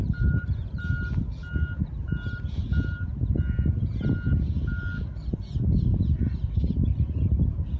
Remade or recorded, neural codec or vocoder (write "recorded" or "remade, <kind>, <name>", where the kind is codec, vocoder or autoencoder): recorded